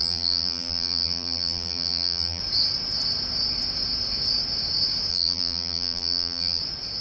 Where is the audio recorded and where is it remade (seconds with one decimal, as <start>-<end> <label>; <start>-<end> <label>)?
0.0-2.4 remade; 2.4-5.1 recorded; 5.1-6.6 remade; 6.6-7.0 recorded